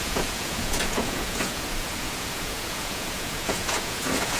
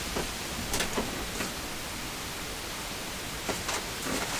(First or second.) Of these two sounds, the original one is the second